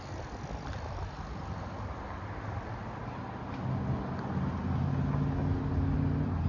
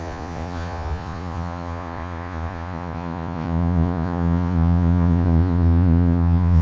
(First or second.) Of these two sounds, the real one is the first